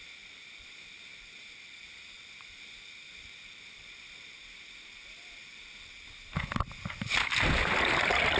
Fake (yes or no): no